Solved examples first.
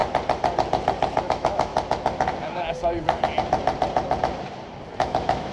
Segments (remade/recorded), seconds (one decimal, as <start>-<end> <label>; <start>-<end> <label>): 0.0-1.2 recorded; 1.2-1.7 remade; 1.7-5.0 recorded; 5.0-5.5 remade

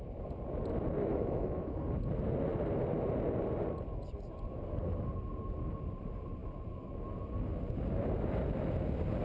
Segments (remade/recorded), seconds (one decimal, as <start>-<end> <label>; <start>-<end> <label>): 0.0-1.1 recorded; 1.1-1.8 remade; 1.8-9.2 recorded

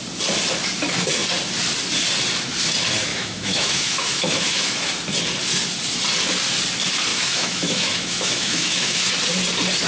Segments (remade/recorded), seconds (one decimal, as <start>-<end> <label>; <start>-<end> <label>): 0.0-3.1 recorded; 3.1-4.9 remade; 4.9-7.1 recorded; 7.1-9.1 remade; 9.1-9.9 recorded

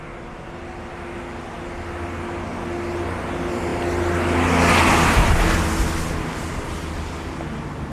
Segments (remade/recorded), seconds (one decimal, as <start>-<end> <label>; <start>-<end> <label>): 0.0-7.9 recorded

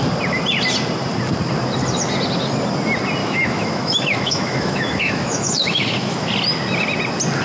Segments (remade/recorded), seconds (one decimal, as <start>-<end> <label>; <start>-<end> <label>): 0.0-3.2 recorded; 3.2-6.3 remade; 6.3-7.4 recorded

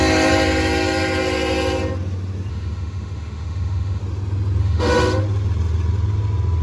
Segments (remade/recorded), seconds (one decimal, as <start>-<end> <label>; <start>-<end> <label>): 0.0-2.5 recorded; 2.5-4.0 remade; 4.0-4.6 recorded; 4.6-5.2 remade; 5.2-6.6 recorded

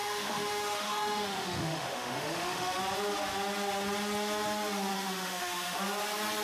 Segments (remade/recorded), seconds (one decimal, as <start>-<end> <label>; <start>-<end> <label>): 0.0-2.8 remade; 2.8-4.9 recorded; 4.9-5.8 remade; 5.8-6.4 recorded